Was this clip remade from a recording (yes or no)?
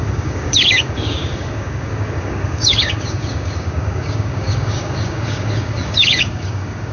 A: yes